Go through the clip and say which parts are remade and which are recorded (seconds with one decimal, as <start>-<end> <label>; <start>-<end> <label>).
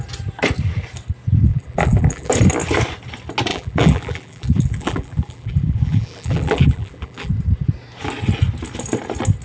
0.0-1.5 recorded; 1.5-2.3 remade; 2.3-3.5 recorded; 3.5-7.3 remade; 7.3-9.4 recorded